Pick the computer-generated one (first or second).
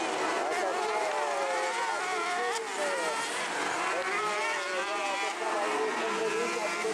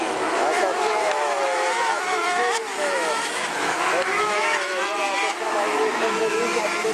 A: second